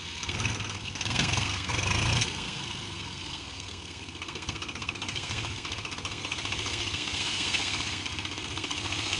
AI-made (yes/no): yes